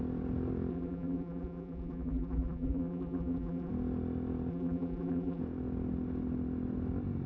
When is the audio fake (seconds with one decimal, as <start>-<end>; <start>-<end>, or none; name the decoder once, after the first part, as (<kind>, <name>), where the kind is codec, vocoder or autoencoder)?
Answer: 0.7-3.7 (vocoder, BigVGAN v2); 4.5-5.4